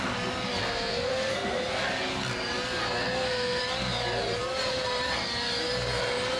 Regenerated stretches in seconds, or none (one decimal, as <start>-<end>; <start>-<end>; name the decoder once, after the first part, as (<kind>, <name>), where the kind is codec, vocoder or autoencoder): 0.6-1.8 (codec, SNAC); 2.8-3.6